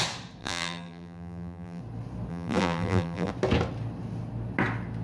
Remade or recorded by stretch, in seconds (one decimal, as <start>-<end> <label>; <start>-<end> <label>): 0.0-0.4 recorded; 0.4-1.8 remade; 1.8-2.3 recorded; 2.3-3.3 remade; 3.3-5.0 recorded